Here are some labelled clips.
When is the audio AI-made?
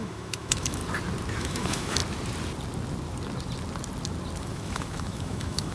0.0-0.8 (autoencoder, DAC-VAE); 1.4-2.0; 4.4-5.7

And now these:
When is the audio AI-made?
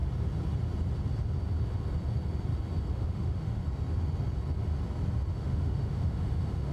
2.9-3.6 (autoencoder, DAC-VAE); 5.3-6.7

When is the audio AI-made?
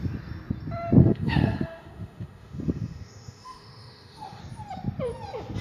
1.0-4.4 (autoencoder, DAC-VAE)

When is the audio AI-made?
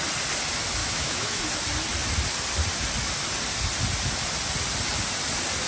0.8-1.4 (autoencoder, DAC-VAE)